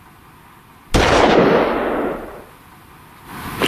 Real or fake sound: real